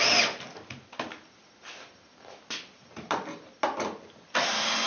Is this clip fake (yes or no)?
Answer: no